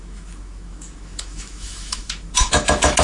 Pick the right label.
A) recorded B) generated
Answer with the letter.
B